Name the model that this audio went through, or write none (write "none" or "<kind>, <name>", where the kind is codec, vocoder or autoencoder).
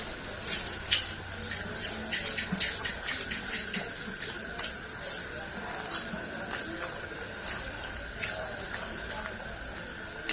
none